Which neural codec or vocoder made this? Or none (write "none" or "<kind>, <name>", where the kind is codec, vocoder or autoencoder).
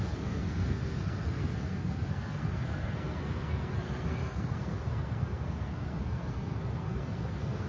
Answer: codec, SNAC